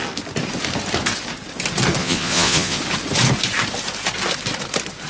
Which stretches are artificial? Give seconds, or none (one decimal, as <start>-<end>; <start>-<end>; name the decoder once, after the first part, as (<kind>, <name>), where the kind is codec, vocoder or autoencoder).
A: 2.0-2.8 (vocoder, Vocos)